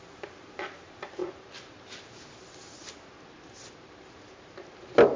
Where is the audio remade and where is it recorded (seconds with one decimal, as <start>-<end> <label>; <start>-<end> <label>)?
0.0-5.2 recorded